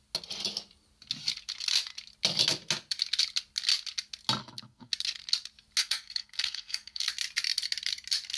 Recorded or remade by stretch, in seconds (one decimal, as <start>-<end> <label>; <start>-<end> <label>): 0.0-4.4 recorded; 4.4-4.9 remade; 4.9-5.8 recorded; 5.8-7.1 remade; 7.1-8.4 recorded